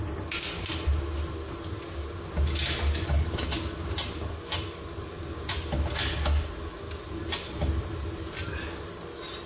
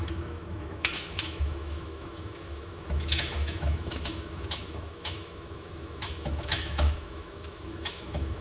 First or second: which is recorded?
first